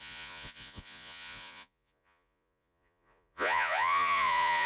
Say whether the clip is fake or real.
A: fake